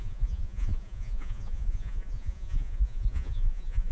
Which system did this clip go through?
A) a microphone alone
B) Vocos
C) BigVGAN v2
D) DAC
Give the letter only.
B